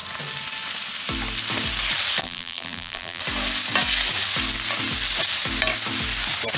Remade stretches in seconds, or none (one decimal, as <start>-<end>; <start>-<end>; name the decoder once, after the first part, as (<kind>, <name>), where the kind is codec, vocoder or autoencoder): 2.2-3.2 (vocoder, BigVGAN v2)